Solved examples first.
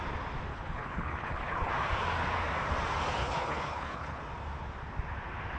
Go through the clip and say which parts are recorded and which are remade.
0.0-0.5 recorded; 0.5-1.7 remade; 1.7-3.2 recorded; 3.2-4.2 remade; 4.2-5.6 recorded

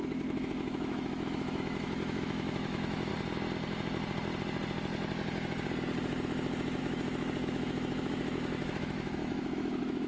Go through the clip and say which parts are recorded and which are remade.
0.0-3.1 remade; 3.1-6.8 recorded; 6.8-10.1 remade

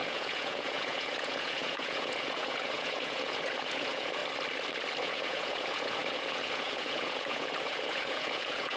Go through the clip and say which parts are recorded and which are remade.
0.0-4.2 remade; 4.2-5.0 recorded; 5.0-8.8 remade

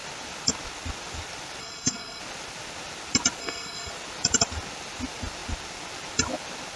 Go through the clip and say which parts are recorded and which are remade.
0.0-1.6 recorded; 1.6-2.2 remade; 2.2-3.4 recorded; 3.4-3.9 remade; 3.9-6.8 recorded